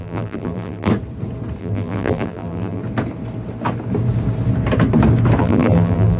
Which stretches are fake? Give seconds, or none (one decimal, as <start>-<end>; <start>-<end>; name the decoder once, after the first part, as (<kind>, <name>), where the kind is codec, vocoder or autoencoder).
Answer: 0.0-0.9 (vocoder, BigVGAN v2); 1.6-2.8; 5.4-6.2

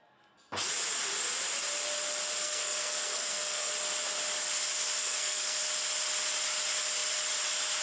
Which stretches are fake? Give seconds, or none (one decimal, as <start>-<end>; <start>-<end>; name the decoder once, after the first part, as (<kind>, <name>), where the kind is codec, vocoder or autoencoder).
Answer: 2.4-3.7 (codec, SNAC); 5.0-5.6